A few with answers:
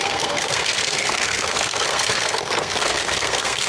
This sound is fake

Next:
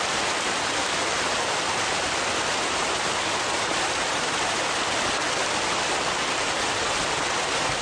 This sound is real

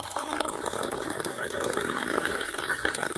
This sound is fake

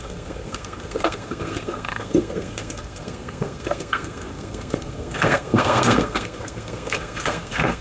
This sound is fake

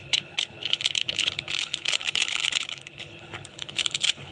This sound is fake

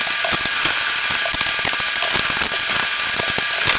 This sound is real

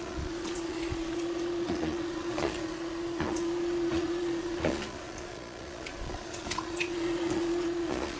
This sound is fake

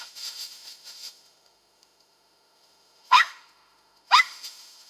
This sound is fake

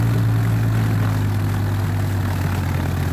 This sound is real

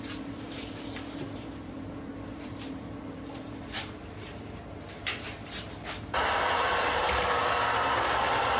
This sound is fake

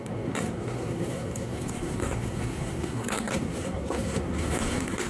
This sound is fake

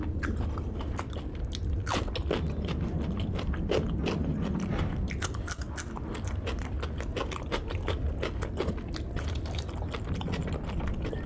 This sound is real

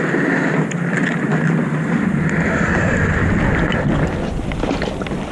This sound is real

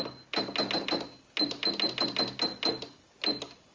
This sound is real